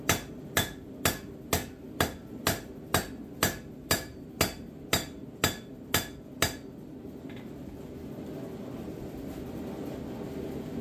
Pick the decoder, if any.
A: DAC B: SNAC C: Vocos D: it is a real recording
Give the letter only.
D